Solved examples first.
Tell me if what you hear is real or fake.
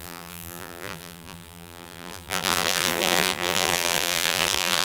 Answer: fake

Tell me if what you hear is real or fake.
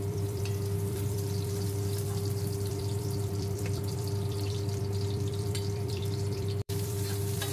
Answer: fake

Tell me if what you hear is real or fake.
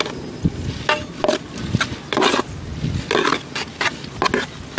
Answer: real